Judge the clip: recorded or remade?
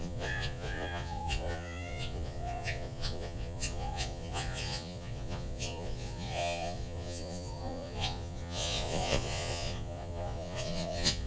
remade